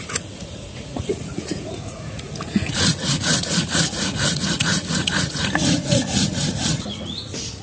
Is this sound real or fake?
fake